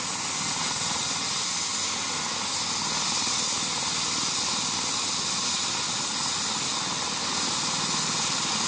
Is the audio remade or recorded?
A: recorded